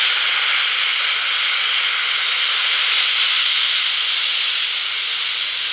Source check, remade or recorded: recorded